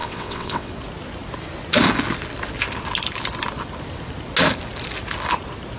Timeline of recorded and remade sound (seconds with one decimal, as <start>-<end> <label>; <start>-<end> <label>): 0.0-0.7 remade; 0.7-5.8 recorded